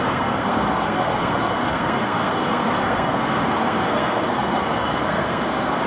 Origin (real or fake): fake